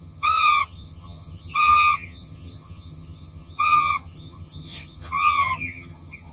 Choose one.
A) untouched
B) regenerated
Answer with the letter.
B